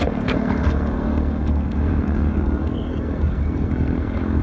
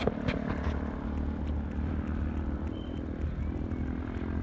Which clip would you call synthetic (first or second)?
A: first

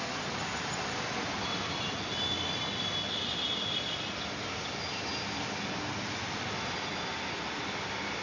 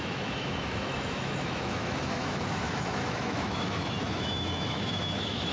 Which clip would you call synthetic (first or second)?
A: second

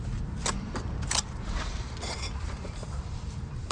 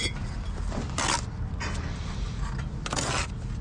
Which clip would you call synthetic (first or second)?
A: first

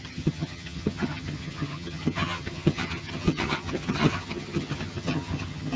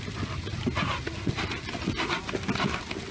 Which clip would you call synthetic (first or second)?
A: first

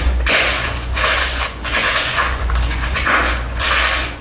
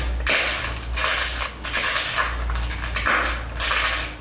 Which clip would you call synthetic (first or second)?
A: first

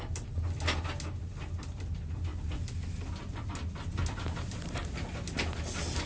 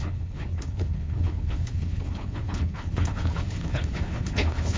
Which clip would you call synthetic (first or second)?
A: second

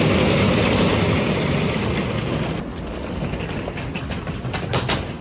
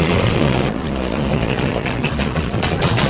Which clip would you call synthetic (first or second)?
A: second